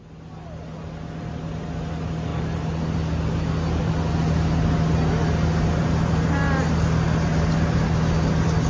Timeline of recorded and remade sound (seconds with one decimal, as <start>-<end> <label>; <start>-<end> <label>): 0.0-8.7 recorded